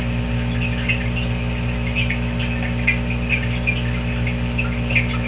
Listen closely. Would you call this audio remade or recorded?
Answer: recorded